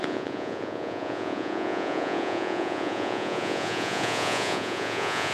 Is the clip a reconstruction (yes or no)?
yes